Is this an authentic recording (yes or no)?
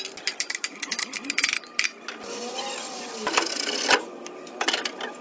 yes